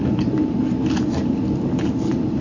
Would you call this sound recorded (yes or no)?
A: yes